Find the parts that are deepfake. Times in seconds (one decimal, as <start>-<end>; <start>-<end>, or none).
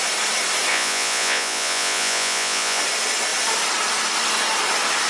0.7-2.8